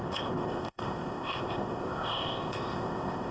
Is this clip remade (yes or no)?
yes